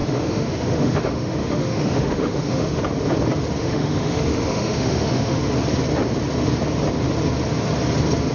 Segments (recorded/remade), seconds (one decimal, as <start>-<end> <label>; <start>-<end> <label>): 0.0-2.8 remade; 2.8-3.6 recorded; 3.6-5.5 remade; 5.5-8.3 recorded